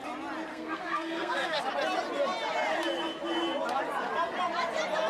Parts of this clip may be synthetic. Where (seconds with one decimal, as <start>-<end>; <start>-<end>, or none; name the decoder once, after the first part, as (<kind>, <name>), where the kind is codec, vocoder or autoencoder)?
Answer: 0.5-1.6 (codec, SNAC)